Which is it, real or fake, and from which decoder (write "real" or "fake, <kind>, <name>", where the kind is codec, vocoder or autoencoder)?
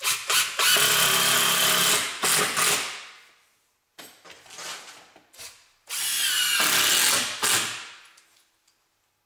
real